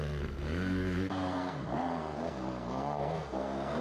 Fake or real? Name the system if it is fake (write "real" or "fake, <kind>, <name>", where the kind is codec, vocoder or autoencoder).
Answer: fake, codec, SNAC